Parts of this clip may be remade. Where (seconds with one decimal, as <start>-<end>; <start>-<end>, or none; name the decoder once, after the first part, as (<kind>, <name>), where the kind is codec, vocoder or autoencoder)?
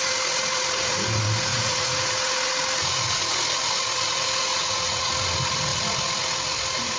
1.5-2.1 (vocoder, Vocos); 4.5-5.1